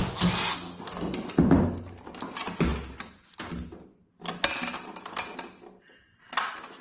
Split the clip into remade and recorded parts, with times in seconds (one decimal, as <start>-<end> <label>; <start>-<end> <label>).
0.0-6.8 recorded